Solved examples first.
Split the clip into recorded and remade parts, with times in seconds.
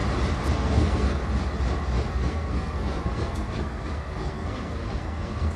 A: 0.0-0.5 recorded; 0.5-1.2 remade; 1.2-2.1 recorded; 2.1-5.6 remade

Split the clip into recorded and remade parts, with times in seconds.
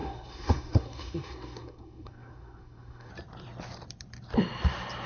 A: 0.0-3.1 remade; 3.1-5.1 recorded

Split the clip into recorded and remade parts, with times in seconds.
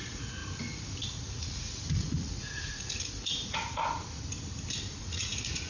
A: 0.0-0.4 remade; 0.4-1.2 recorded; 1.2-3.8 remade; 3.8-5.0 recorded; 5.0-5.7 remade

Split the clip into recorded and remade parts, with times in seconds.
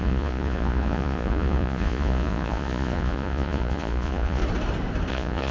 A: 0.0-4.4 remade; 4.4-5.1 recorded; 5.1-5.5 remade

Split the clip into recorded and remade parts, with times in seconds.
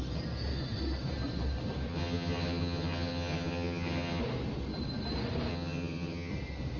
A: 0.0-1.9 recorded; 1.9-4.2 remade; 4.2-5.5 recorded; 5.5-6.3 remade; 6.3-6.8 recorded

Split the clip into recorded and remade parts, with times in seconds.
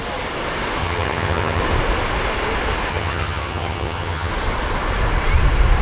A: 0.0-0.8 recorded; 0.8-1.6 remade; 1.6-2.9 recorded; 2.9-4.3 remade; 4.3-5.8 recorded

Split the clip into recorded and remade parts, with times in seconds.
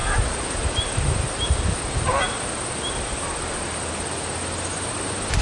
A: 0.0-5.4 recorded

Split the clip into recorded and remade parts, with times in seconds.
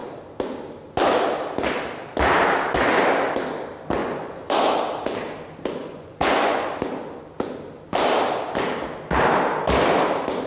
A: 0.0-4.0 recorded; 4.0-4.8 remade; 4.8-5.8 recorded; 5.8-6.7 remade; 6.7-10.5 recorded